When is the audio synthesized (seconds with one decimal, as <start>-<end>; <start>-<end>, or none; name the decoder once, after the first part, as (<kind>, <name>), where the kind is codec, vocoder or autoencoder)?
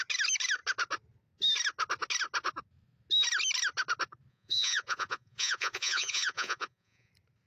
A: 4.3-7.1 (vocoder, Vocos)